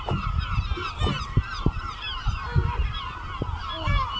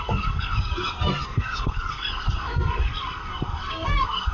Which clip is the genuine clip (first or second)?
first